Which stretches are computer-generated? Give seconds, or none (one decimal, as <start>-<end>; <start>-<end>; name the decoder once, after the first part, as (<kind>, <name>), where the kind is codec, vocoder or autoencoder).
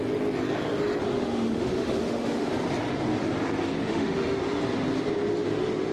1.1-2.5 (autoencoder, DAC-VAE); 3.9-4.6